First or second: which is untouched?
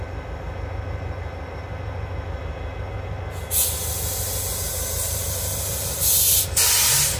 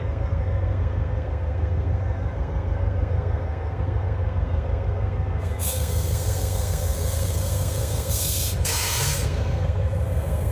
first